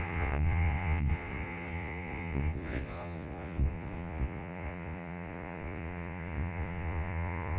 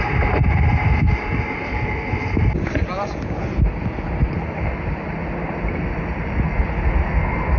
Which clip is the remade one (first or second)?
first